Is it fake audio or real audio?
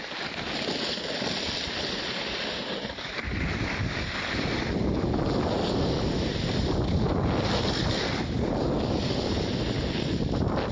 real